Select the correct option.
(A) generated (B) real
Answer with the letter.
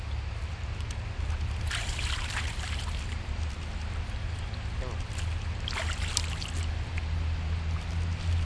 B